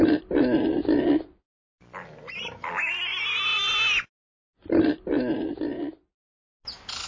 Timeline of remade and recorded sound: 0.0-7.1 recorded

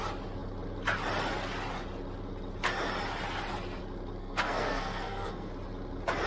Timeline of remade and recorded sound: 0.0-4.2 recorded; 4.2-5.5 remade; 5.5-6.3 recorded

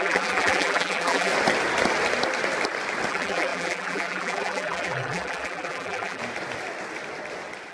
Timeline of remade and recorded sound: 0.0-1.3 remade; 1.3-3.1 recorded; 3.1-6.2 remade; 6.2-7.7 recorded

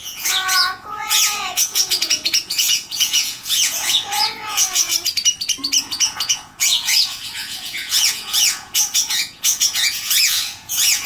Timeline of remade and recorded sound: 0.0-4.9 remade; 4.9-5.8 recorded; 5.8-11.1 remade